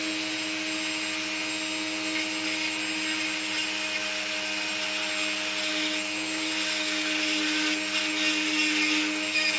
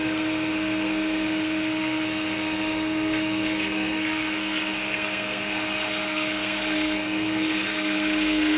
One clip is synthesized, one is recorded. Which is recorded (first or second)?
first